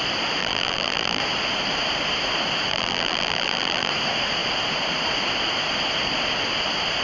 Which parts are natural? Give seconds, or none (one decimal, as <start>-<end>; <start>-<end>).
0.0-0.4; 1.2-2.7; 3.9-7.0